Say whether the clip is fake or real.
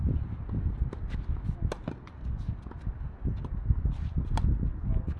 real